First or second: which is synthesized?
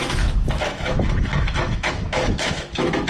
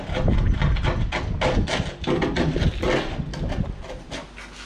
first